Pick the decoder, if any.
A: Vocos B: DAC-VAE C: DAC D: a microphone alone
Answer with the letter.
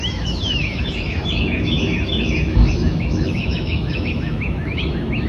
B